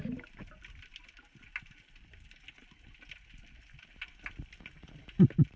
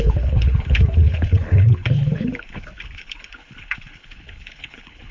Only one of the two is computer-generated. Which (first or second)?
second